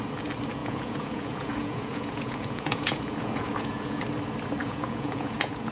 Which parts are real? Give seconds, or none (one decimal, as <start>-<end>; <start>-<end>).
0.0-0.6; 4.0-4.6